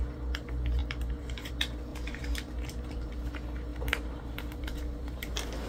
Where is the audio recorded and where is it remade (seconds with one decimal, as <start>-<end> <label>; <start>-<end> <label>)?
0.0-0.8 recorded; 0.8-1.5 remade; 1.5-1.9 recorded; 1.9-3.1 remade; 3.1-3.7 recorded; 3.7-5.7 remade